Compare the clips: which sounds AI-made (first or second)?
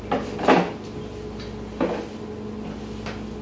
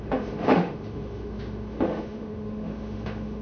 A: second